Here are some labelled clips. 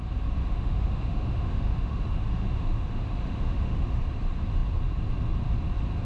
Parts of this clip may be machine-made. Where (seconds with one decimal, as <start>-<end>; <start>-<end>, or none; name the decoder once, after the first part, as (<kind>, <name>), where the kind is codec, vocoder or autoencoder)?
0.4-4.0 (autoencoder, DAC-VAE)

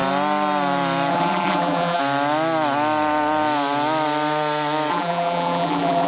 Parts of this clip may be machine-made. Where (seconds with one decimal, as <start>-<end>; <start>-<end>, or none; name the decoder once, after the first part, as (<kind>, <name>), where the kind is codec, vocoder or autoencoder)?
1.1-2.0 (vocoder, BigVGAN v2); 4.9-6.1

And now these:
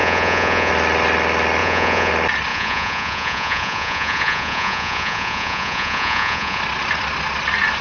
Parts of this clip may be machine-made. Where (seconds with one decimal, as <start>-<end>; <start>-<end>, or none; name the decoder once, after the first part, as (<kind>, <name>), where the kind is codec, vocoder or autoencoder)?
0.0-0.7 (vocoder, Vocos); 1.6-2.1; 2.5-6.6